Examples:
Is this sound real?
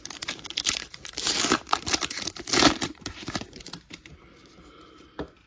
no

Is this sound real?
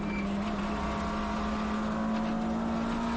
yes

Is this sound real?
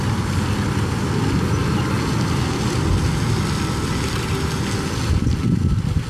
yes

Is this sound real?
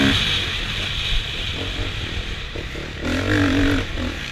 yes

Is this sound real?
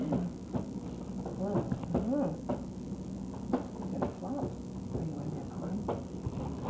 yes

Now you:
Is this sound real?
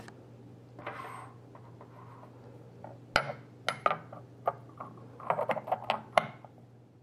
yes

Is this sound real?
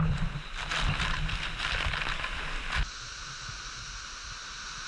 yes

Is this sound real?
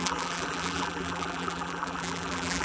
no